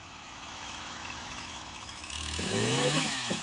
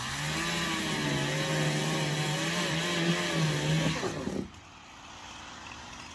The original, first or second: second